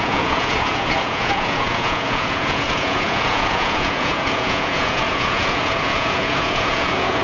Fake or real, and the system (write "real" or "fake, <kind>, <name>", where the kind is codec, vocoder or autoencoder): fake, vocoder, Vocos